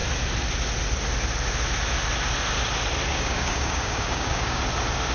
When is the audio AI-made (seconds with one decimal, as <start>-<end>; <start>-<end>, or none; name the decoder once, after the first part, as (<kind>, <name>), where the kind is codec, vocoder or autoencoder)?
3.1-4.6 (codec, DAC)